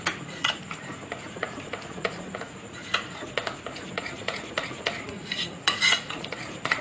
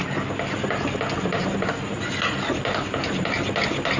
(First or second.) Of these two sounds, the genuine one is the second